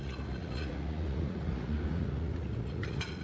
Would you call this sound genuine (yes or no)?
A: no